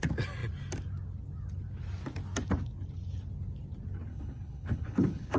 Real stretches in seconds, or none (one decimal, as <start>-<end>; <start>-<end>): 0.0-4.1

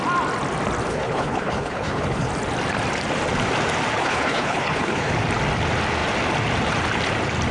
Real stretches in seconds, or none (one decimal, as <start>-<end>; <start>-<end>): 0.0-0.9; 2.3-4.0; 5.1-7.5

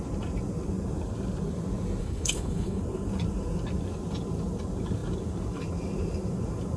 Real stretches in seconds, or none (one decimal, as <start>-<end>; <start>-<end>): 0.0-2.0; 2.8-6.8

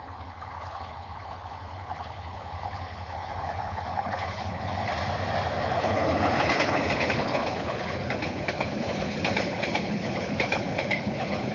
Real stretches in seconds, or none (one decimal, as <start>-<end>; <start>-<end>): 4.9-5.6